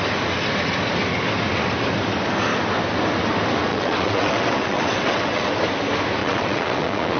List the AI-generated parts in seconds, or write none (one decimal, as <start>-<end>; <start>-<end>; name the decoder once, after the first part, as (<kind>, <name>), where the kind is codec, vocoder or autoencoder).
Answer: 3.7-5.5 (vocoder, WaveNeXt); 6.2-7.2